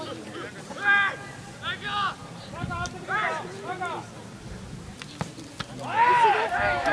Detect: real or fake real